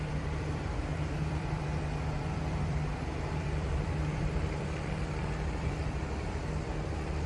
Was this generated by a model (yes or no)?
yes